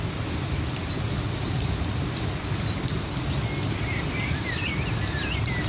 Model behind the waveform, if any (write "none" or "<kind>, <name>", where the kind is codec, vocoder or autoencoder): none